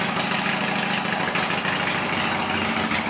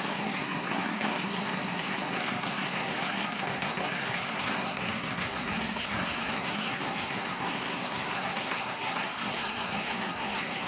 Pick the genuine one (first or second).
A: first